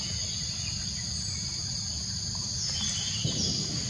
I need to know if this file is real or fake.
real